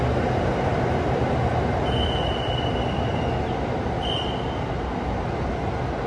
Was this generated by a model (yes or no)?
no